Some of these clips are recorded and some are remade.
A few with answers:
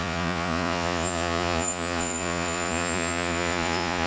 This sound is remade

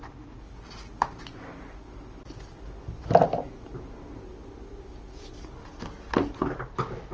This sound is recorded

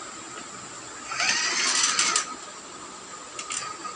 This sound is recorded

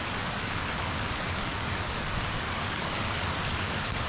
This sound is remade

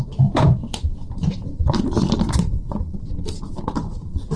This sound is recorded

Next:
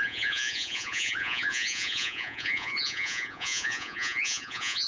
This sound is remade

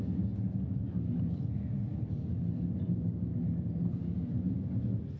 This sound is recorded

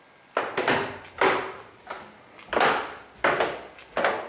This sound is recorded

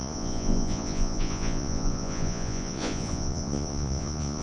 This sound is remade